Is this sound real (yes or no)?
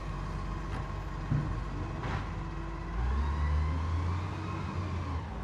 yes